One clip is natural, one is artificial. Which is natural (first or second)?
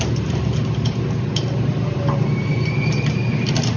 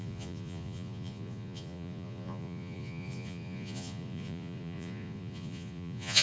first